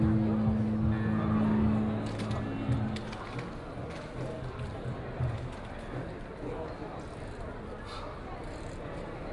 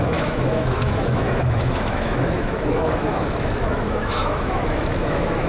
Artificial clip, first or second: second